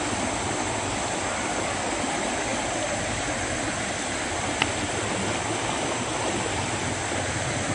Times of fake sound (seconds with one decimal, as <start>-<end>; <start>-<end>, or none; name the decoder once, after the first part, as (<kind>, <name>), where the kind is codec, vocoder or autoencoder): none